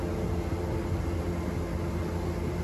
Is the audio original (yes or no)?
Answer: yes